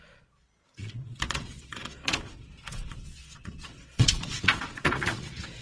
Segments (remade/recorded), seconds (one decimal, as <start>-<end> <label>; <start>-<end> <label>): 0.0-5.6 remade